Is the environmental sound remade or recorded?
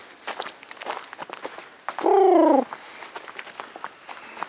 recorded